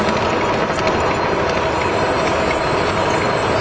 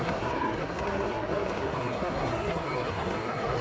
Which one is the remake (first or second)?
second